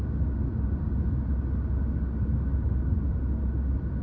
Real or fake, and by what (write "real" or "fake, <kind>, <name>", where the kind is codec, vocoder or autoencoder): real